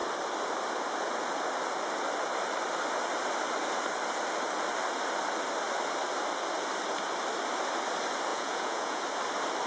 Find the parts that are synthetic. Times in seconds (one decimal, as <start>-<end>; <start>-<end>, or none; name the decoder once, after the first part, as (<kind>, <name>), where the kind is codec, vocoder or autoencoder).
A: 8.3-9.0 (vocoder, Vocos)